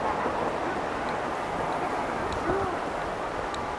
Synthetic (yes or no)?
no